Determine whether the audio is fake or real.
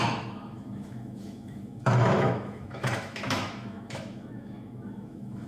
fake